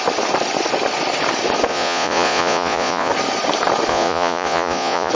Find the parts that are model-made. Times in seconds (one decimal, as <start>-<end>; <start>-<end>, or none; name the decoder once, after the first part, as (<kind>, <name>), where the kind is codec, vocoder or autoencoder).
1.7-3.1 (vocoder, Vocos); 3.9-5.1